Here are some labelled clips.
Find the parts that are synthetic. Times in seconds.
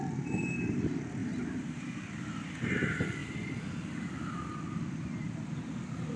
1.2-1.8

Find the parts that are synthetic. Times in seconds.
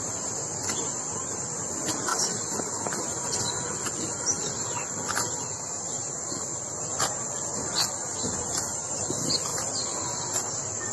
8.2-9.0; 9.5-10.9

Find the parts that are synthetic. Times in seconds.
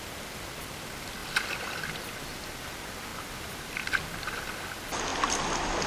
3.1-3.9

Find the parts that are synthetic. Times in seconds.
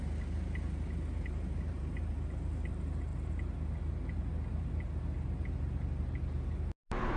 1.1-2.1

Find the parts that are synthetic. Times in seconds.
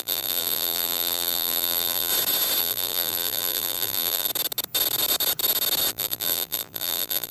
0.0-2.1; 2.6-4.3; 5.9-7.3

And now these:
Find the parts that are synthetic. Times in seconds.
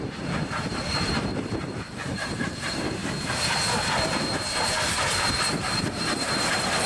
0.0-3.0; 4.9-6.9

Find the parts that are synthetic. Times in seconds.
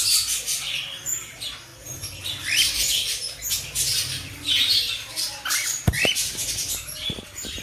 0.0-7.6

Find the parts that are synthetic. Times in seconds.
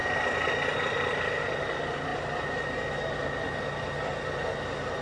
0.0-5.0